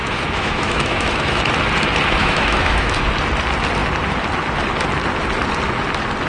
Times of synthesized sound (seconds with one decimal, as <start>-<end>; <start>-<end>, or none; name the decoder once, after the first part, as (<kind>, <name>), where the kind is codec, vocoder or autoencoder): 0.0-1.4 (autoencoder, DAC-VAE); 2.2-3.0